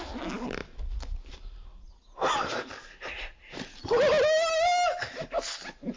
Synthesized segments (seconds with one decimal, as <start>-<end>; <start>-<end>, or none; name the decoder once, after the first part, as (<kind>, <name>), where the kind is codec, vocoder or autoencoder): none